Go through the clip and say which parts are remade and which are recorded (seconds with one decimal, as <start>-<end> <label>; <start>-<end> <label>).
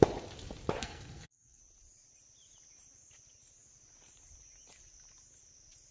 0.0-0.8 recorded; 0.8-1.6 remade; 1.6-5.9 recorded